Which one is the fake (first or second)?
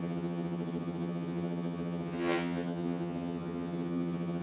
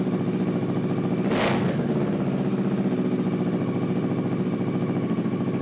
first